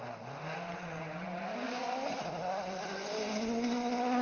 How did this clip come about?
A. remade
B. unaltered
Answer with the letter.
B